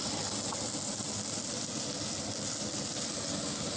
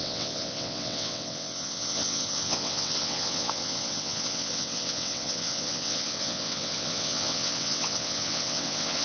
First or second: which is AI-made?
second